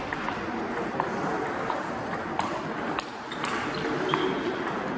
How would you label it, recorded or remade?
recorded